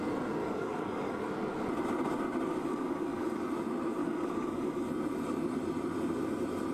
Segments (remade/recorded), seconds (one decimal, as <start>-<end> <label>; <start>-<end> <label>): 0.0-0.4 recorded; 0.4-1.2 remade; 1.2-2.6 recorded; 2.6-3.4 remade; 3.4-4.0 recorded; 4.0-4.8 remade; 4.8-6.7 recorded